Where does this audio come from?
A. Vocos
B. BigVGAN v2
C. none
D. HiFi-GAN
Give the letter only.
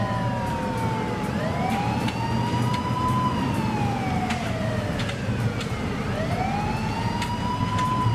C